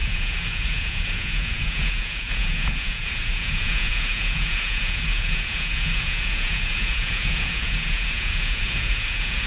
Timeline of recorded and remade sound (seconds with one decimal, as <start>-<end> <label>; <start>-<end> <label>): 0.0-9.5 remade